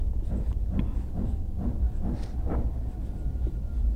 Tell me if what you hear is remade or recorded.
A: recorded